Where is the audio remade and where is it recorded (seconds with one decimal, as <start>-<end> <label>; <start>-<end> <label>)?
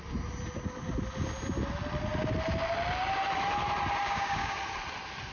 0.0-4.0 recorded; 4.0-4.6 remade; 4.6-5.3 recorded